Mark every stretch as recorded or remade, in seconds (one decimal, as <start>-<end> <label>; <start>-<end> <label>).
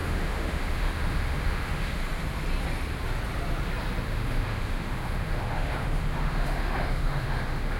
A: 0.0-2.0 remade; 2.0-4.0 recorded; 4.0-7.8 remade